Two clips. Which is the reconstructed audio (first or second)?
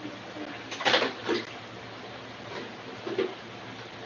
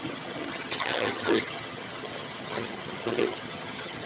second